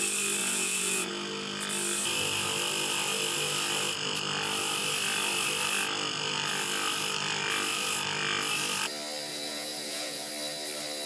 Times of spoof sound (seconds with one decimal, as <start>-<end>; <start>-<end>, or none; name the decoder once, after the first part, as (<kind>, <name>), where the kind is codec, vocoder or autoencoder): 0.4-1.1 (vocoder, Vocos); 9.3-10.3